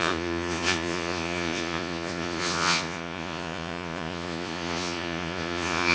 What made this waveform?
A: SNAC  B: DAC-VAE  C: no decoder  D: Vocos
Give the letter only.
D